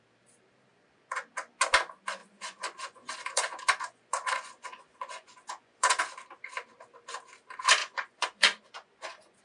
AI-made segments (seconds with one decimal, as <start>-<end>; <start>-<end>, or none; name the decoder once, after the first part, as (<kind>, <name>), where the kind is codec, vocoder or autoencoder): 0.7-1.2 (vocoder, Vocos); 2.2-6.0; 7.8-9.4